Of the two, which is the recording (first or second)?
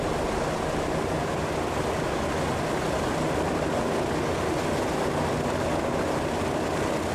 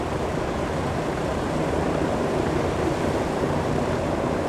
first